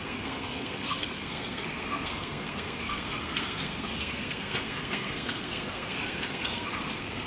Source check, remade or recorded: remade